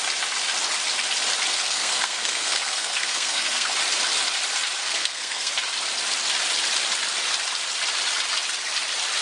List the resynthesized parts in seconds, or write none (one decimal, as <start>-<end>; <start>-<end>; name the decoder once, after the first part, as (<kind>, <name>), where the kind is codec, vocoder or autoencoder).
1.5-3.7 (codec, SNAC); 4.8-5.5